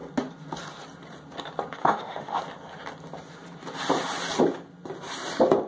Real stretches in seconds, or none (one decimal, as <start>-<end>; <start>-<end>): 0.0-1.8; 2.4-5.7